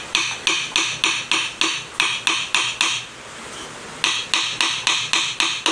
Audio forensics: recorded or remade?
recorded